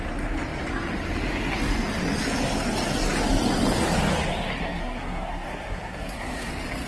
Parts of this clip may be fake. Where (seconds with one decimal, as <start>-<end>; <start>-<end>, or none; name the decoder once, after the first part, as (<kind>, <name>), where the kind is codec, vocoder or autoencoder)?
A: 4.6-6.5 (codec, SNAC)